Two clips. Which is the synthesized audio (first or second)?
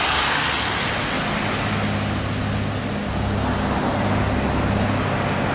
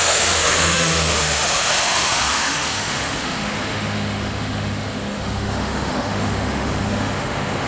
second